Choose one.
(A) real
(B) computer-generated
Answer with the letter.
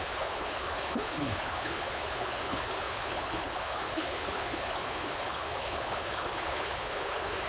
B